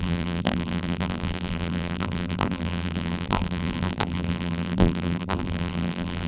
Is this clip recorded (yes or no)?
no